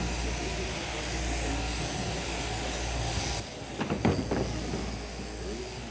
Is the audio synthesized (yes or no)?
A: no